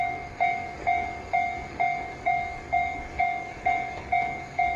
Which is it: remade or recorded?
remade